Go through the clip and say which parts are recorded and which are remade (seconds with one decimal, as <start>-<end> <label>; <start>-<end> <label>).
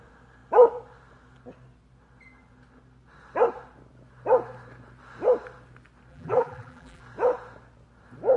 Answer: 0.0-6.1 recorded; 6.1-7.0 remade; 7.0-8.4 recorded